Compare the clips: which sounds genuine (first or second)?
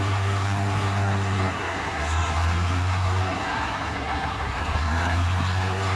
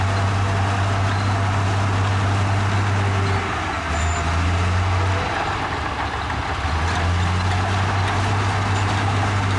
second